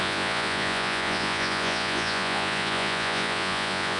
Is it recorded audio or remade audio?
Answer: remade